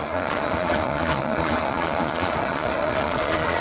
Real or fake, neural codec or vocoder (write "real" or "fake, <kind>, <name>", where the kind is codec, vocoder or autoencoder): fake, vocoder, Vocos